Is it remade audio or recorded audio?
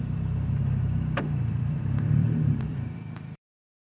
remade